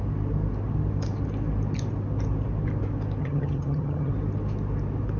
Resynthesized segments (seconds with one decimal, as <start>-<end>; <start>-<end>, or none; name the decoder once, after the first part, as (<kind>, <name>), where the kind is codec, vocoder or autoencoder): 3.2-4.1 (vocoder, HiFi-GAN)